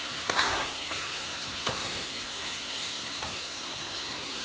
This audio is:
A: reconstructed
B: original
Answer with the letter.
A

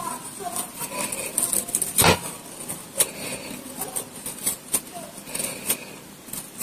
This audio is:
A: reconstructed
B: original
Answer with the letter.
B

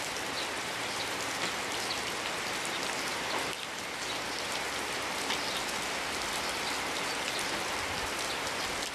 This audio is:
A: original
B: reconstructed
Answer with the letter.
A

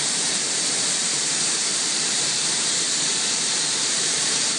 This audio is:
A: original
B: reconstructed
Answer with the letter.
B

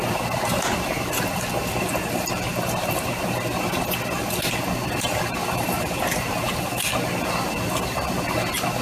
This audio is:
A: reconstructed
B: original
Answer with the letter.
B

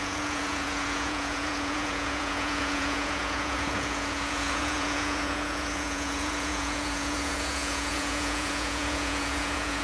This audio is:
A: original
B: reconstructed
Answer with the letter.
B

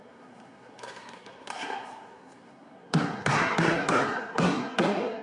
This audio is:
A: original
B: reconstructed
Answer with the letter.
B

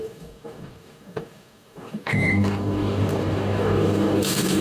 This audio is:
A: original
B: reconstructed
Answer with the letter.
B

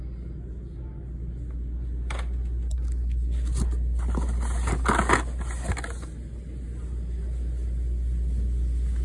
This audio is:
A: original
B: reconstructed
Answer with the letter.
A